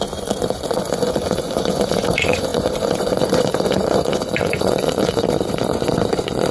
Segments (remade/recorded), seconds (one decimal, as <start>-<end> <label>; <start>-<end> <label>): 0.0-6.5 remade